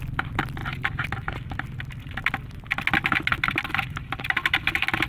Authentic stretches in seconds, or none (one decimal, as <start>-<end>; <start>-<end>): 0.0-5.1